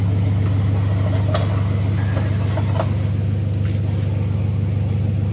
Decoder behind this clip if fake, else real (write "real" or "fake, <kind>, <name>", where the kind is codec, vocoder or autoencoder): real